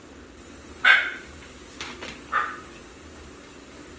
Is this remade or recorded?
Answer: recorded